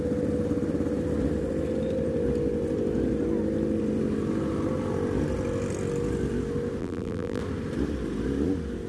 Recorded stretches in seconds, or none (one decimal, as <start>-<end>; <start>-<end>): 0.0-6.8; 7.4-8.9